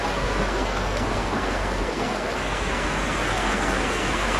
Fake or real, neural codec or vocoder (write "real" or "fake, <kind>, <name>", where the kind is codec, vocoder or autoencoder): fake, codec, SNAC